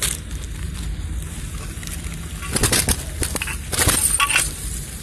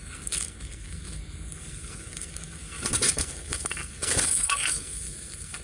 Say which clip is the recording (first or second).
first